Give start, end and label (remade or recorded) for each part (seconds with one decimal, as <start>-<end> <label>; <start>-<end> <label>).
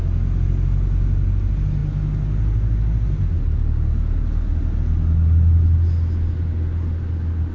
0.0-7.5 recorded